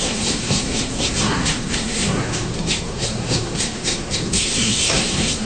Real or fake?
fake